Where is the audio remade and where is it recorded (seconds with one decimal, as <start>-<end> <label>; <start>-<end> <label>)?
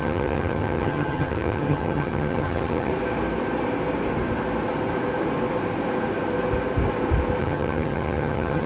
0.0-2.9 remade; 2.9-7.4 recorded; 7.4-8.7 remade